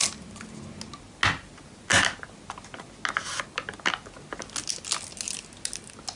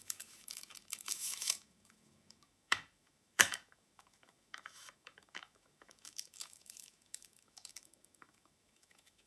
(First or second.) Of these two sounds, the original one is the first